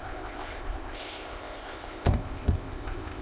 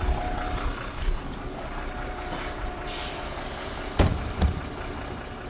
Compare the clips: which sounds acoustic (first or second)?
second